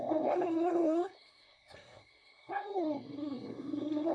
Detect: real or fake fake